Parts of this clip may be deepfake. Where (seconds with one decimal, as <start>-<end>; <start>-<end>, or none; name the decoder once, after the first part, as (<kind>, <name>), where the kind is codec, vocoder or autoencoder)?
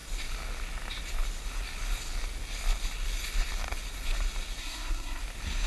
4.6-5.2 (codec, SNAC)